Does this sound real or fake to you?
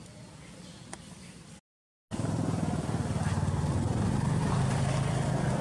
real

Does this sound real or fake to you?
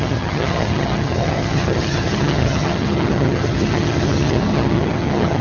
fake